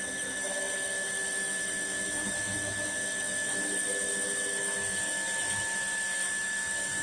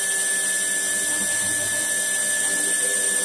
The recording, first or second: second